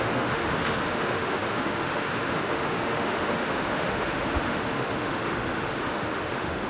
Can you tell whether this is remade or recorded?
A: remade